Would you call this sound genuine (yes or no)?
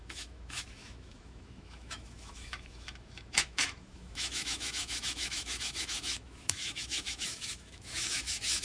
no